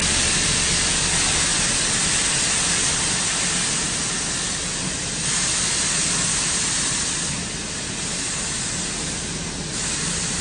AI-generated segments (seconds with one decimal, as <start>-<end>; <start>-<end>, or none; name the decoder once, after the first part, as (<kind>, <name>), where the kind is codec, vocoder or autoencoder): none

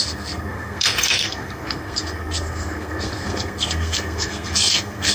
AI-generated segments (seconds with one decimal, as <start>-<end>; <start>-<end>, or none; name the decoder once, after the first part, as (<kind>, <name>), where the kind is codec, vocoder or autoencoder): 0.0-5.1 (codec, SNAC)

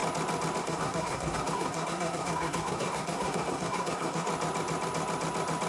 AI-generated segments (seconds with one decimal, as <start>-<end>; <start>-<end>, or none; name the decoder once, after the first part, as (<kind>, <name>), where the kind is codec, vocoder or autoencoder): 0.6-4.3 (codec, SNAC)

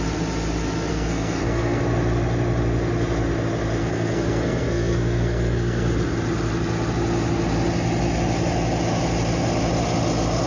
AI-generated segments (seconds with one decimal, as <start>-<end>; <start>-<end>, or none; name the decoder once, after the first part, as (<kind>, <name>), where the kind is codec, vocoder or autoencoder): 0.9-1.8 (codec, SNAC); 3.8-5.9

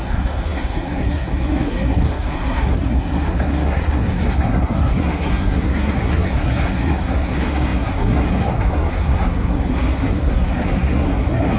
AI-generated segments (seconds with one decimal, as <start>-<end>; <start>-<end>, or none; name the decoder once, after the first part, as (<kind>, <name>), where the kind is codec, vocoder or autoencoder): 0.0-11.6 (codec, SNAC)